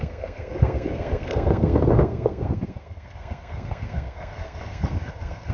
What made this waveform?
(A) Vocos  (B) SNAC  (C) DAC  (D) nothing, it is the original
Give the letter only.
B